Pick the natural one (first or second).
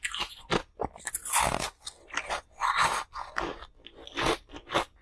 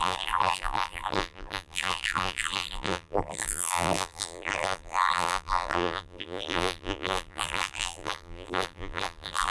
first